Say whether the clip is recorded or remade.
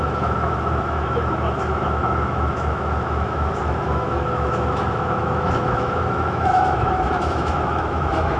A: remade